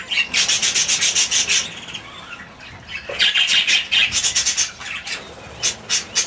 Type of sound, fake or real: real